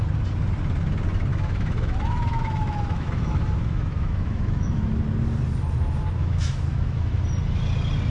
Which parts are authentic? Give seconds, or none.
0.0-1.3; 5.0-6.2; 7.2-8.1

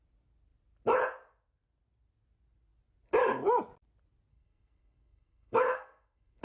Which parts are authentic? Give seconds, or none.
0.0-4.3

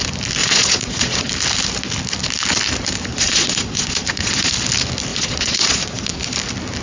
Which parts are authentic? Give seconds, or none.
0.0-0.4; 1.3-3.1; 4.5-5.1; 6.2-6.8

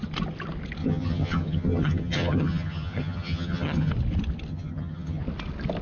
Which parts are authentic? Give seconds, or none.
0.0-0.8; 3.9-4.5; 5.2-5.8

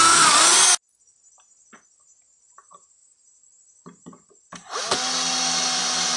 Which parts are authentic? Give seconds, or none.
0.0-6.2

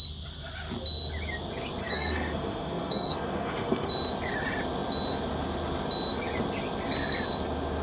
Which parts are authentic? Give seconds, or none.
0.0-1.8; 3.9-7.8